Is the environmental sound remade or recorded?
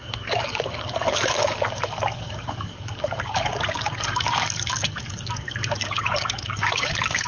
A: remade